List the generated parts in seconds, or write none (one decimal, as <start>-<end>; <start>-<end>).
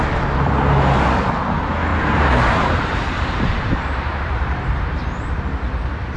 1.9-5.4